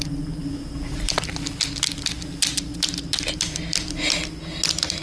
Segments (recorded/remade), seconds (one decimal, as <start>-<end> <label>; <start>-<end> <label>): 0.0-5.0 recorded